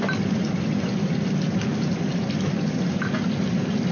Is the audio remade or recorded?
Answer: recorded